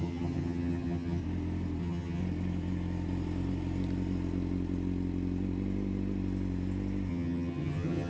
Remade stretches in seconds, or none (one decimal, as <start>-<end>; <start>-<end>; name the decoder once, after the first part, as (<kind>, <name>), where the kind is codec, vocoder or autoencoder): 0.0-1.2 (vocoder, HiFi-GAN); 1.8-2.2; 7.1-8.1